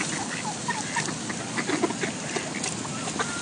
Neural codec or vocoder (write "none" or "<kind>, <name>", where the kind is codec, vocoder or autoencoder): none